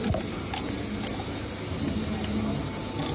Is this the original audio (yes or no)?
yes